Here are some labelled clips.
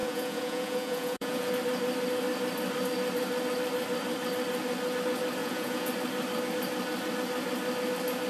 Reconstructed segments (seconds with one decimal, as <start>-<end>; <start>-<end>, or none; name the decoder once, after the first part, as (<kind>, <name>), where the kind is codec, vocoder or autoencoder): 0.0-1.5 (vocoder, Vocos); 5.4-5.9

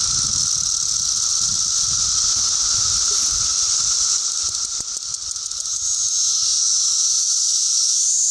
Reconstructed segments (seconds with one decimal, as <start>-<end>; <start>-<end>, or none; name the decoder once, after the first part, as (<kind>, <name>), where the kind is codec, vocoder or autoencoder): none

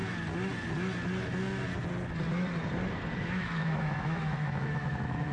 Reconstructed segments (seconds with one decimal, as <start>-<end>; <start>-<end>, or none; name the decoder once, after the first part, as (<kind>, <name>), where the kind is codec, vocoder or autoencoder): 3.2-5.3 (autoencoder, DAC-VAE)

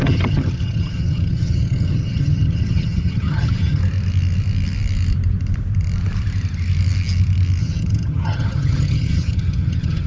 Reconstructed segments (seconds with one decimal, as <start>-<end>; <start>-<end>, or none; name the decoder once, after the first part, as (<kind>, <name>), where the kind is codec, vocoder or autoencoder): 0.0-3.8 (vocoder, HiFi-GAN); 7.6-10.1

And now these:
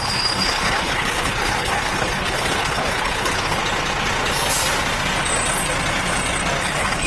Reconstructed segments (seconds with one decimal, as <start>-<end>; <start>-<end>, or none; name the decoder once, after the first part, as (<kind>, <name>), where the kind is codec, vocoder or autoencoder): 0.0-3.6 (codec, HILCodec); 6.6-7.1

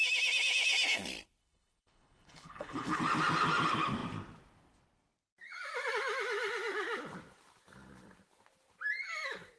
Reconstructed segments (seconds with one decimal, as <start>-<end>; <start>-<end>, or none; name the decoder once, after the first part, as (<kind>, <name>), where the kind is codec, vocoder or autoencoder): 1.4-3.0 (codec, HILCodec)